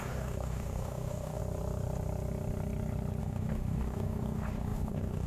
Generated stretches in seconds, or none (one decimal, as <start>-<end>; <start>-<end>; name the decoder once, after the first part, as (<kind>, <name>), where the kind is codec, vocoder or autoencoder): 0.0-1.4 (codec, DAC); 3.2-5.3